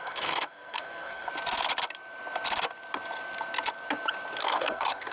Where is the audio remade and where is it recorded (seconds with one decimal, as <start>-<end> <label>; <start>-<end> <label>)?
0.0-1.3 remade; 1.3-4.4 recorded; 4.4-5.1 remade